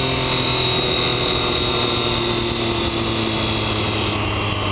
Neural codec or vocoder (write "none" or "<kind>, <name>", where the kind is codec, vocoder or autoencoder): none